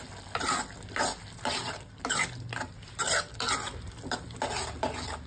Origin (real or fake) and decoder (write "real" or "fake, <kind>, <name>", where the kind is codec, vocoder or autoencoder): real